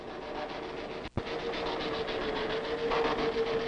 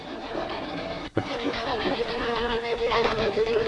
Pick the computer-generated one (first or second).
second